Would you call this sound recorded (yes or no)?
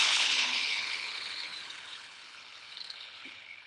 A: no